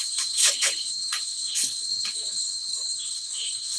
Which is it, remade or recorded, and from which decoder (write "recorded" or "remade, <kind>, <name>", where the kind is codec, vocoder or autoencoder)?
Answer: remade, codec, HILCodec